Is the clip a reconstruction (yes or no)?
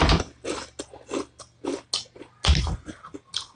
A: no